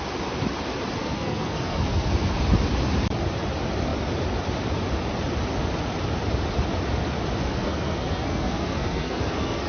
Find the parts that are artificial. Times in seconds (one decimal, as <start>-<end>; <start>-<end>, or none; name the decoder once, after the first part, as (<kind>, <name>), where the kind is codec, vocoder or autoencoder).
1.0-2.1 (codec, SNAC); 7.4-9.7